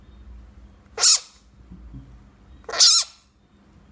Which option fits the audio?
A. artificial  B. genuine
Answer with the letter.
B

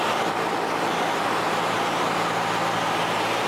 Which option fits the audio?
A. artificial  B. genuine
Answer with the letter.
B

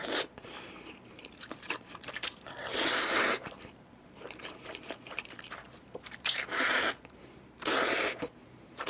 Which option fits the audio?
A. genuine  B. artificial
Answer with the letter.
B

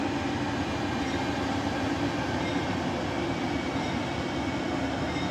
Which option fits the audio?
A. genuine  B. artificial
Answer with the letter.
A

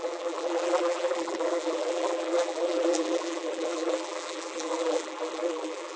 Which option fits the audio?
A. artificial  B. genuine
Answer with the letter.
A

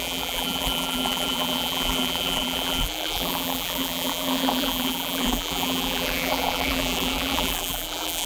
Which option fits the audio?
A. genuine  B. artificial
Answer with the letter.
B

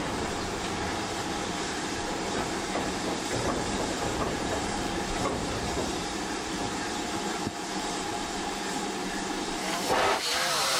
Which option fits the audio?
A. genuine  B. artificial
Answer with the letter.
B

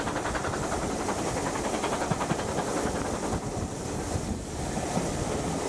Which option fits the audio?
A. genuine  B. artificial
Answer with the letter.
A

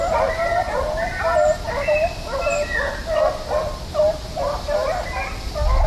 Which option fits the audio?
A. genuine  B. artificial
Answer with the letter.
A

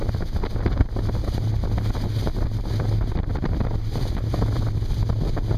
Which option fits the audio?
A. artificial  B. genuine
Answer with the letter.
B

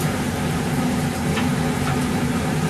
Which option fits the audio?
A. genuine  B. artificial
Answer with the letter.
B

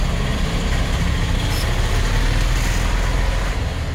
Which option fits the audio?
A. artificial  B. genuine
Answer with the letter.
B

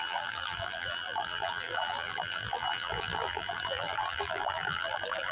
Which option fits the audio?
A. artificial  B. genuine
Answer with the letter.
A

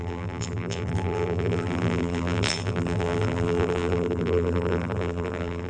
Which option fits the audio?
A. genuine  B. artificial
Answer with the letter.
B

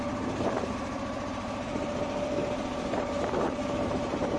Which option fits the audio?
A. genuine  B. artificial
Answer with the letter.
B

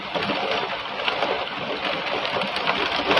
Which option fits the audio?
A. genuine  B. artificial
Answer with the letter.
A